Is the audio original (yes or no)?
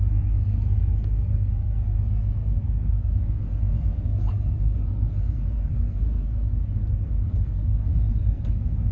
no